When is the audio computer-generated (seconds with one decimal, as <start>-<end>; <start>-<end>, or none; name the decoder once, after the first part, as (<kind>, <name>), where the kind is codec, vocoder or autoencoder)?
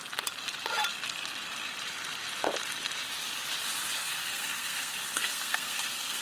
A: 4.0-6.2 (codec, SNAC)